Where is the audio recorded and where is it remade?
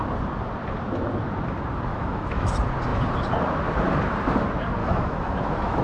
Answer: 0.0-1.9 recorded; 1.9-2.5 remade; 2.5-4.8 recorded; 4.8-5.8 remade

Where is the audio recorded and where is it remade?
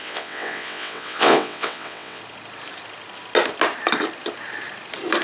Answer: 0.0-2.2 remade; 2.2-5.2 recorded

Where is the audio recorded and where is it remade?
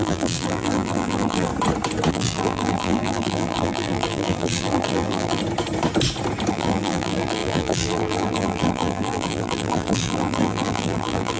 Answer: 0.0-1.5 remade; 1.5-2.1 recorded; 2.1-5.4 remade; 5.4-6.5 recorded; 6.5-11.4 remade